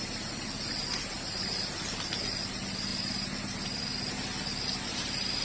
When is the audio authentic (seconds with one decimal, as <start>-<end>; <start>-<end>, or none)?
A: 0.0-5.4